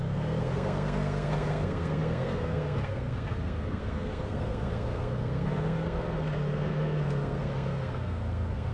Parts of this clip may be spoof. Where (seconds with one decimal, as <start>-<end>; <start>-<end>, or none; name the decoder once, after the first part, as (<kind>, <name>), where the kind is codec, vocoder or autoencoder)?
0.0-8.7 (codec, SNAC)